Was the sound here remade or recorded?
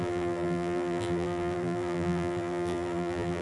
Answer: remade